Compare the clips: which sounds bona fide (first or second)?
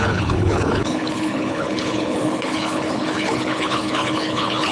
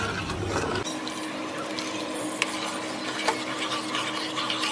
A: second